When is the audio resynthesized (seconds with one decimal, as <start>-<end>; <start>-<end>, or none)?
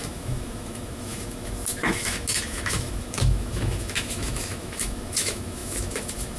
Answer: 0.0-6.4